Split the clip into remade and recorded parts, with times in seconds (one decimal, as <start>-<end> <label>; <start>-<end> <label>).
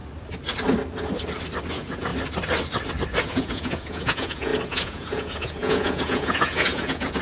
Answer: 0.0-1.7 recorded; 1.7-2.1 remade; 2.1-3.2 recorded; 3.2-7.2 remade